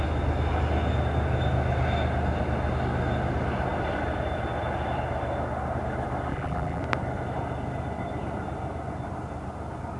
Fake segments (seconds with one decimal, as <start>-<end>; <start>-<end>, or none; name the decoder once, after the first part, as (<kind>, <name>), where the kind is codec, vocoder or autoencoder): 6.3-6.8 (vocoder, BigVGAN v2)